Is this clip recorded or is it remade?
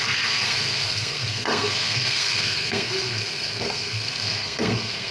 remade